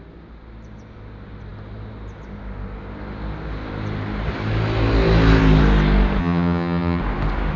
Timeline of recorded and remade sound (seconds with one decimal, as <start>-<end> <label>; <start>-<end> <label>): 0.0-6.2 recorded; 6.2-7.0 remade; 7.0-7.6 recorded